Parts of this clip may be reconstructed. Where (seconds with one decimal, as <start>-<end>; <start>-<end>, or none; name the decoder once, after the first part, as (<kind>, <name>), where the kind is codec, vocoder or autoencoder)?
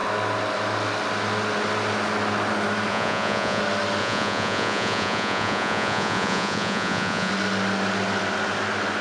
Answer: 2.9-3.6 (vocoder, Vocos); 4.0-7.3